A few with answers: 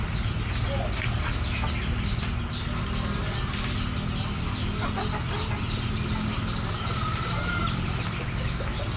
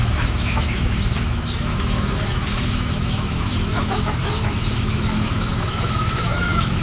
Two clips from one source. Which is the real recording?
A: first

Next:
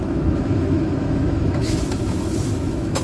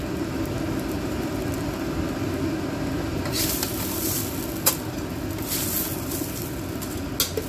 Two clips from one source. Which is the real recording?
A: second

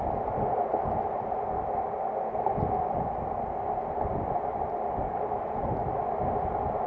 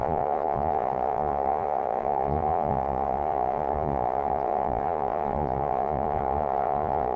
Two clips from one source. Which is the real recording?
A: first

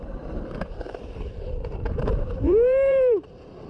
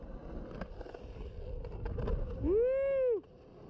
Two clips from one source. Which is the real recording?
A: second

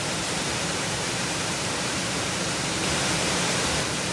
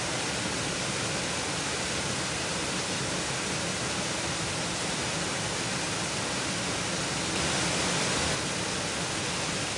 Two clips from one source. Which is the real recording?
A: second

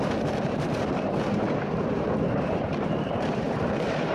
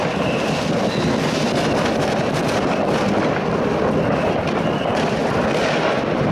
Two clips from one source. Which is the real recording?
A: second